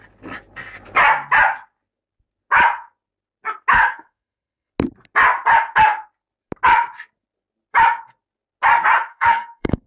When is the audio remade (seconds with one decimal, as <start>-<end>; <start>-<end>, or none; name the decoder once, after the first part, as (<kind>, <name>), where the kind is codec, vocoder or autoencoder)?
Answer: 3.7-4.7 (codec, SNAC); 9.1-9.9